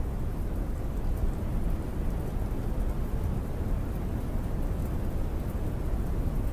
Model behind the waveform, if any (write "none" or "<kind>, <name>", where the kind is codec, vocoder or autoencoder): none